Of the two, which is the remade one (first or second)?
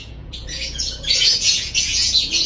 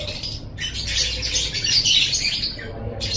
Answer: first